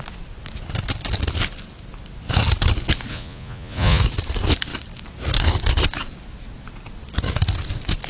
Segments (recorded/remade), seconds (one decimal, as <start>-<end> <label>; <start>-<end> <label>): 0.0-3.1 recorded; 3.1-4.0 remade; 4.0-8.1 recorded